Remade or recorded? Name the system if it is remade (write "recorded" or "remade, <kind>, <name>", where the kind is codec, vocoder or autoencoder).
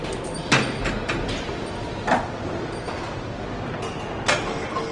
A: recorded